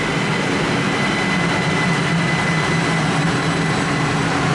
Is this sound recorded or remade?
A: recorded